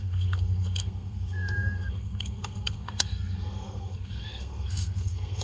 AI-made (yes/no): yes